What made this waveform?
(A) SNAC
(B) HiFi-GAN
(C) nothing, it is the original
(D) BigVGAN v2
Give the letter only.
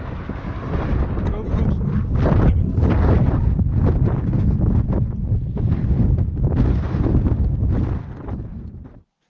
C